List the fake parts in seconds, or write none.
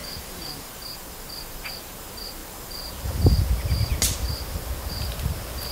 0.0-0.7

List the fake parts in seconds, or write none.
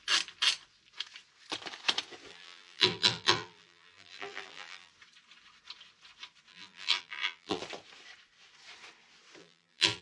2.3-4.9; 6.5-7.6; 9.4-10.0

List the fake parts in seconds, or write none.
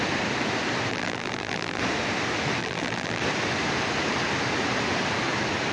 0.9-1.8; 2.6-3.2